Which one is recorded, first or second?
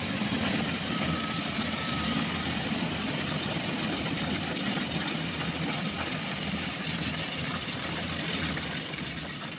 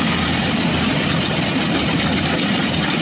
second